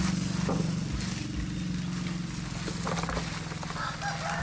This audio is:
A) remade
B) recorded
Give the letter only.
B